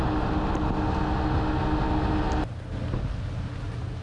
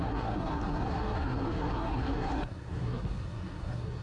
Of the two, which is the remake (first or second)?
second